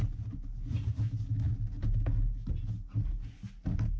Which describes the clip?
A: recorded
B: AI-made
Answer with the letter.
A